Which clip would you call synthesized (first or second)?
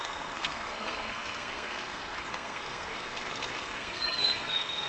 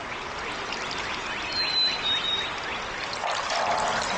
first